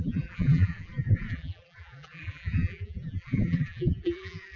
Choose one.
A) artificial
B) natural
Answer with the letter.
A